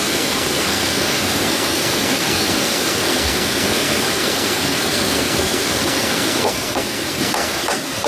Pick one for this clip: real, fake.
fake